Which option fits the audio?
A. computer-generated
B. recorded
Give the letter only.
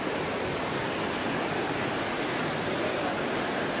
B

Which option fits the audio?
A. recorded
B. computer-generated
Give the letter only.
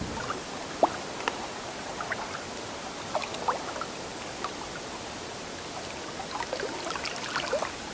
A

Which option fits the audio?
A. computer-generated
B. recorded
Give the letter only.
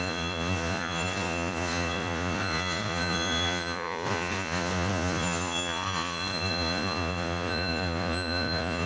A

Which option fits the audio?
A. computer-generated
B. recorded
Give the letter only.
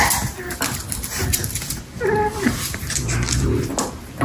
B